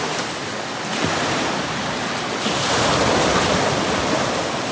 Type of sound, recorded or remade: recorded